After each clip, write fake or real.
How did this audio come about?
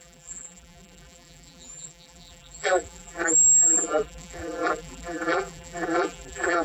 fake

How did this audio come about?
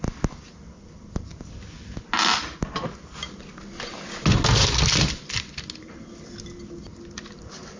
real